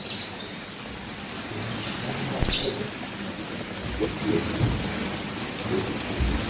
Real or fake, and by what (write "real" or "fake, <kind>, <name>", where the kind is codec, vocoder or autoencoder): real